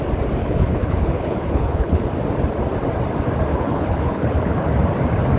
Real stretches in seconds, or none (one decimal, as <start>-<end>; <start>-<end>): 0.0-0.4; 2.1-3.5; 4.7-5.4